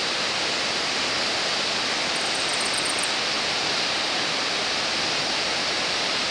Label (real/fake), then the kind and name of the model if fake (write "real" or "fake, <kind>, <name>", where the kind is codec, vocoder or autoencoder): fake, vocoder, BigVGAN v2